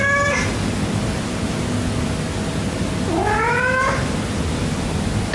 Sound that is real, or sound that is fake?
real